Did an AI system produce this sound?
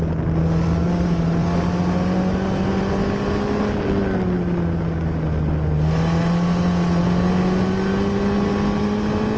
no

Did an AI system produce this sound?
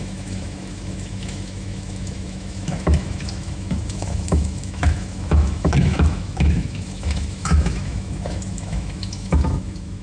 yes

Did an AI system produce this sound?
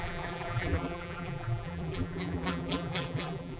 yes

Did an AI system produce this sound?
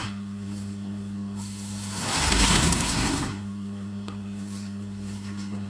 yes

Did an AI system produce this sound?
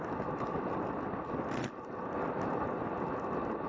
no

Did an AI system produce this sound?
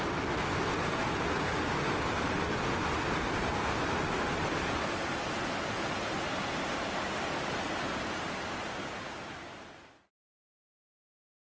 no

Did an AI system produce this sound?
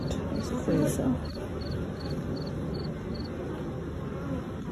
no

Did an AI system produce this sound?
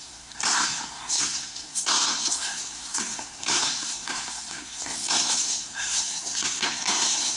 yes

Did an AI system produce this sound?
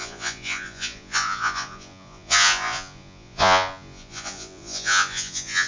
yes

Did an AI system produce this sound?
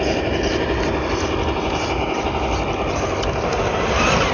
no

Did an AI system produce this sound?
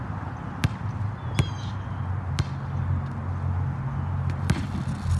no